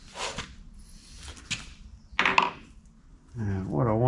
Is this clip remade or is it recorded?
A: recorded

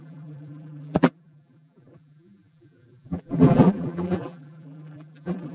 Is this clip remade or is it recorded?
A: remade